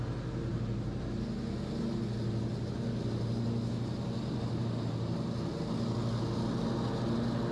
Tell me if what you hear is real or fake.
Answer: real